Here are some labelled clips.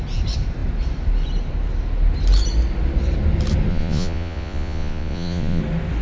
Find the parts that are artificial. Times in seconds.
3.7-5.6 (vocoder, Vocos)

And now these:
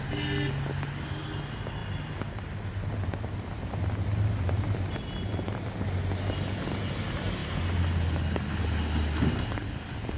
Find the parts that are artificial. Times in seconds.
none